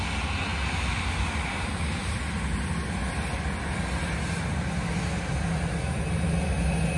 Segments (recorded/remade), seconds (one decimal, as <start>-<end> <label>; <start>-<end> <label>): 0.0-7.0 recorded